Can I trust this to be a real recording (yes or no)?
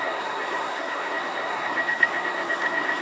no